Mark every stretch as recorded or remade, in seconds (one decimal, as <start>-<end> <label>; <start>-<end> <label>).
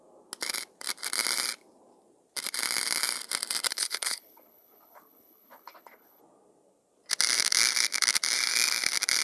0.0-3.7 recorded; 3.7-6.2 remade; 6.2-9.2 recorded